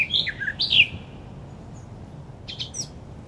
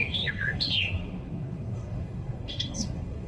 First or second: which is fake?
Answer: second